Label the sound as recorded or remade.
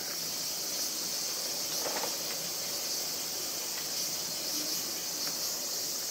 recorded